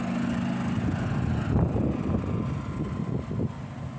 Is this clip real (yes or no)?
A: yes